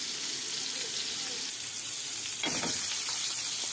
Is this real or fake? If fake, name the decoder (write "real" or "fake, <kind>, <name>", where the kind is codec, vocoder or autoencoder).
real